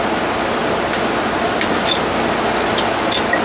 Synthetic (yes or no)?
no